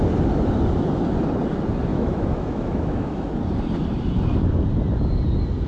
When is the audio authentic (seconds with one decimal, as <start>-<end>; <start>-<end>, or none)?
0.0-1.9; 3.3-5.7